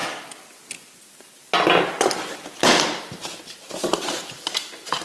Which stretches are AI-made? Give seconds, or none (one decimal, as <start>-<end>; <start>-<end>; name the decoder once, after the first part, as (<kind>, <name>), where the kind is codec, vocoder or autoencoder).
none